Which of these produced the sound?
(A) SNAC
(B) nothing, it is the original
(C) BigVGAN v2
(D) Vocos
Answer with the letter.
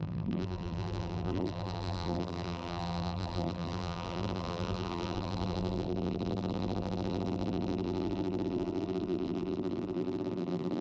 C